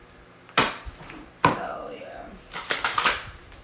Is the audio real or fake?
fake